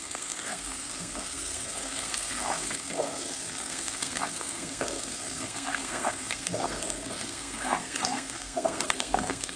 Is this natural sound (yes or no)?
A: no